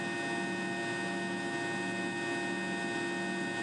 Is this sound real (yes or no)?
yes